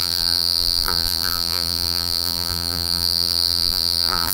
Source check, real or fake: fake